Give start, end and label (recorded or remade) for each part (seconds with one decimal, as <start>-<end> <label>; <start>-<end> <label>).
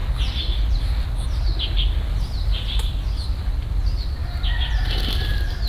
0.0-5.7 recorded